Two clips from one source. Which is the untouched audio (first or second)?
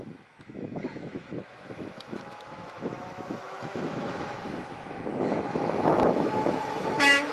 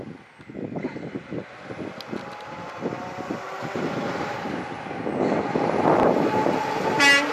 second